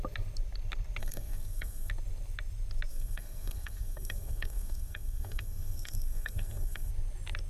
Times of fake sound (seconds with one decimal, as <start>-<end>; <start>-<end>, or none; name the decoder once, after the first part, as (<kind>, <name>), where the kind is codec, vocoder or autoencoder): 1.0-1.9 (codec, SNAC); 2.9-6.9